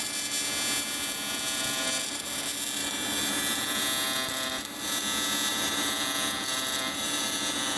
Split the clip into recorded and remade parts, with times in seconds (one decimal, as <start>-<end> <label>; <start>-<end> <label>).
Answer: 0.0-2.8 recorded; 2.8-3.8 remade; 3.8-5.5 recorded; 5.5-7.8 remade

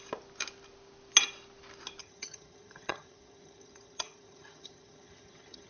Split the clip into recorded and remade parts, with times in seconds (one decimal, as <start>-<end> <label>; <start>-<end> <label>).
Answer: 0.0-2.0 recorded; 2.0-5.7 remade

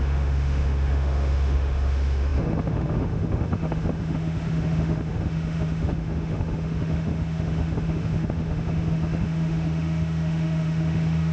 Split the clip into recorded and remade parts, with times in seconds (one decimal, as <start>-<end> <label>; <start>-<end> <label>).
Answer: 0.0-11.3 remade